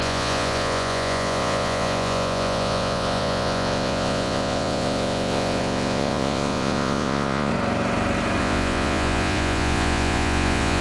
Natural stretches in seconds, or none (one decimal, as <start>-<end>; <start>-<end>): 7.5-8.4